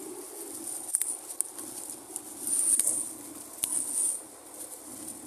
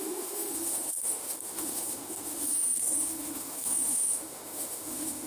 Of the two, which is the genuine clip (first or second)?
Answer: first